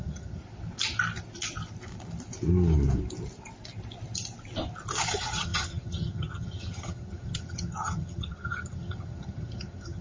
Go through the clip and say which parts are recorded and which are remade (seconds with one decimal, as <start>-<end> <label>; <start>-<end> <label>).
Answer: 0.0-0.4 remade; 0.4-5.1 recorded; 5.1-10.0 remade